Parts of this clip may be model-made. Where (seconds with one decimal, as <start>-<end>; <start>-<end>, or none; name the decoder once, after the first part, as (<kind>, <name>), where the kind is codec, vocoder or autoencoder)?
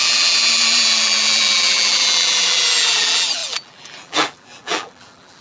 0.0-5.4 (vocoder, BigVGAN v2)